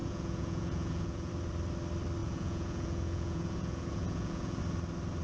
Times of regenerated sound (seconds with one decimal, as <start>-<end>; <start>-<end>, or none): 0.0-1.3; 2.2-4.6